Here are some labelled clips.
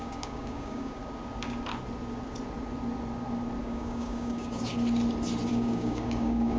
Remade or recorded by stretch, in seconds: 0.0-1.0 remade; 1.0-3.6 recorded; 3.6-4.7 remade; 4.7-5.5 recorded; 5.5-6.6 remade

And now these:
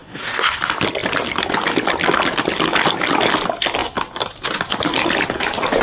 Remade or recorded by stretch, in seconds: 0.0-0.6 remade; 0.6-5.8 recorded

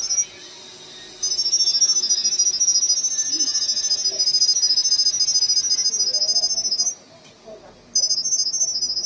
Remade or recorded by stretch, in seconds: 0.0-9.1 recorded

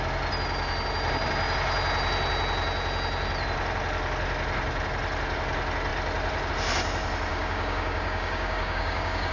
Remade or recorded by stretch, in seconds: 0.0-7.3 recorded; 7.3-9.3 remade